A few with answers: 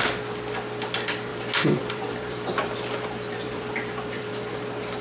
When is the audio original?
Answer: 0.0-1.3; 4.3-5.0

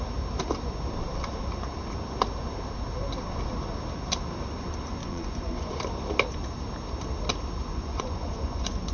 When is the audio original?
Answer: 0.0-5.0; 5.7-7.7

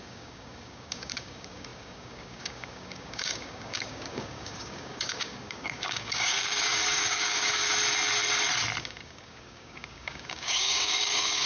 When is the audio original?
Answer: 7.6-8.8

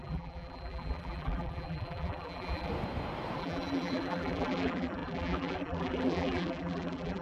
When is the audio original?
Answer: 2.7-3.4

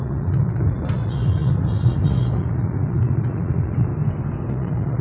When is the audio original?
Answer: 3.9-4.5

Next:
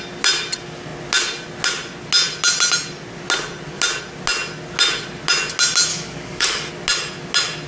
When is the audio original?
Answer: 0.0-5.9; 6.7-7.7

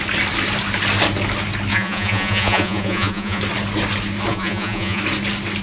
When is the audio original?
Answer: 0.0-1.7; 3.4-4.3; 5.0-5.6